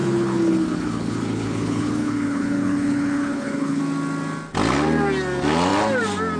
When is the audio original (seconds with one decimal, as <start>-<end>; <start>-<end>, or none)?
3.8-6.4